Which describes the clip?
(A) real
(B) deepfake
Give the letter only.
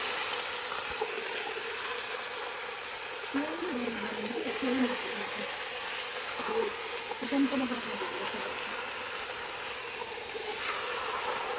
A